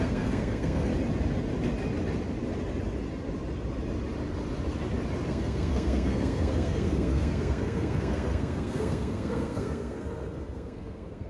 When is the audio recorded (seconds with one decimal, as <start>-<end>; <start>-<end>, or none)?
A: 0.9-5.3